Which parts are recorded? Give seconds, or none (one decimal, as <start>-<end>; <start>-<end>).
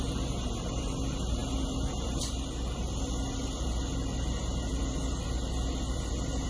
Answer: 0.0-6.5